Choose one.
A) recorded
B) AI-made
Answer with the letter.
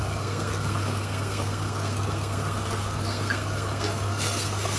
B